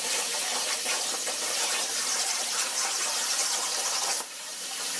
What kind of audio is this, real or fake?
fake